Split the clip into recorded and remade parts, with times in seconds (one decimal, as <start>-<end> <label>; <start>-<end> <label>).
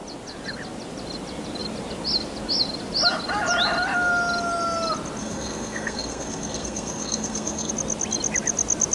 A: 0.0-5.2 recorded; 5.2-7.7 remade; 7.7-8.9 recorded